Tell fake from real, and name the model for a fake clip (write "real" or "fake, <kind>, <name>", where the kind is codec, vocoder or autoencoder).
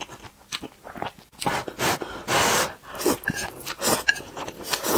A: real